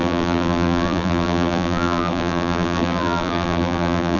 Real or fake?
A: fake